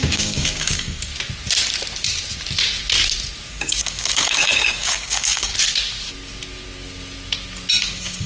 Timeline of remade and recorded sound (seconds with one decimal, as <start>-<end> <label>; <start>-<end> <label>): 0.0-1.1 remade; 1.1-3.5 recorded; 3.5-5.5 remade; 5.5-7.8 recorded; 7.8-8.3 remade